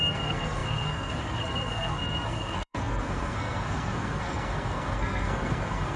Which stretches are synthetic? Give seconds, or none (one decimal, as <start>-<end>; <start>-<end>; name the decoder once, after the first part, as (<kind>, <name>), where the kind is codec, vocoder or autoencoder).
0.0-6.0 (codec, SNAC)